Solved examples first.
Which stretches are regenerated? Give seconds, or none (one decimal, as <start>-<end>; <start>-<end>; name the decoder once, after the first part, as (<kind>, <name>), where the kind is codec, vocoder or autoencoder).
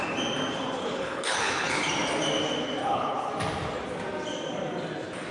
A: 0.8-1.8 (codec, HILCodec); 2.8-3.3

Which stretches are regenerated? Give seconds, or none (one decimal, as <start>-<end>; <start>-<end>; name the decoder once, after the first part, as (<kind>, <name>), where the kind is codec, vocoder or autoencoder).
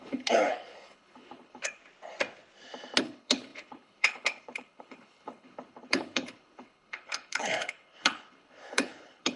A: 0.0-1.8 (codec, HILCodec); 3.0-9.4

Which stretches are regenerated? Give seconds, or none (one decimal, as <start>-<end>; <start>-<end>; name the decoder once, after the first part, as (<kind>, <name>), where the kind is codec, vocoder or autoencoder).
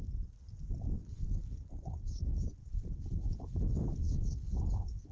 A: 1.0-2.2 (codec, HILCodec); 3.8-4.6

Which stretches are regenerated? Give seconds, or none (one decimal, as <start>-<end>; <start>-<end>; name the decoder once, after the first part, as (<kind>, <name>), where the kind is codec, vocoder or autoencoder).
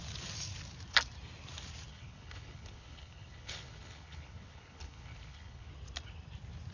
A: 1.9-5.7 (codec, HILCodec)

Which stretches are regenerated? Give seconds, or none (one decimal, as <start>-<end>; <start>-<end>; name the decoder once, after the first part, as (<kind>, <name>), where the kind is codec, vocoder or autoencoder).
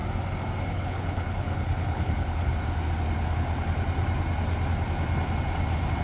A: 0.7-2.5 (codec, HILCodec)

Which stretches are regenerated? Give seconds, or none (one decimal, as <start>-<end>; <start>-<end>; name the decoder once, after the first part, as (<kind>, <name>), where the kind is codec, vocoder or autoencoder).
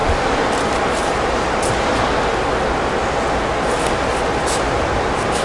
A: none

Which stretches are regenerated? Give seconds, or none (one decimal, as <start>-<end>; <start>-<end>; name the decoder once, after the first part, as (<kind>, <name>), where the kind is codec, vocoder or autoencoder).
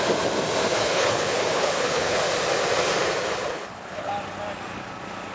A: 0.8-2.2 (codec, HILCodec); 3.5-4.1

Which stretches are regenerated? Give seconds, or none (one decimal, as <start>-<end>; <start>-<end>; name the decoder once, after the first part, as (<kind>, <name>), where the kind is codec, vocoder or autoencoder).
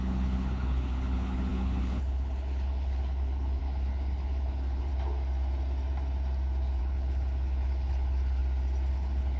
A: 0.0-4.9 (codec, HILCodec); 6.8-8.4; 8.9-9.4